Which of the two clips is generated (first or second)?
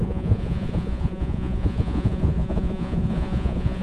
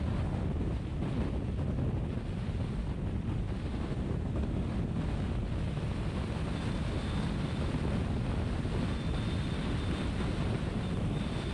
first